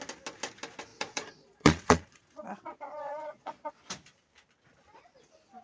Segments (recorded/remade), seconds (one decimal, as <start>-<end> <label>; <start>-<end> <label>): 0.0-0.9 recorded; 0.9-3.8 remade; 3.8-5.6 recorded